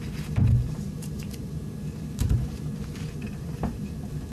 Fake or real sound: fake